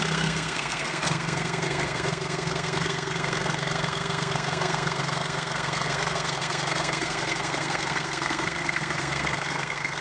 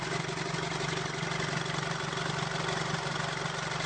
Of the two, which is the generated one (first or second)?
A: first